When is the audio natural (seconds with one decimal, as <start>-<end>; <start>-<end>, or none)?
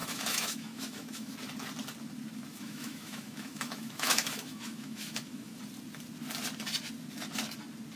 1.3-2.5; 5.6-8.0